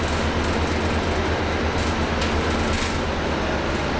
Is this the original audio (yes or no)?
yes